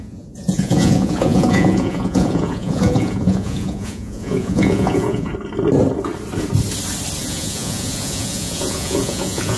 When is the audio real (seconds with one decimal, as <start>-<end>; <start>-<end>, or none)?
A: 5.3-7.2